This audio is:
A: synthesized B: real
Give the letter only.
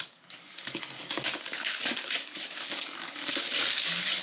A